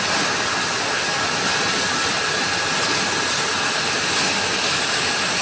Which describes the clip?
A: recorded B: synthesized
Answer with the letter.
A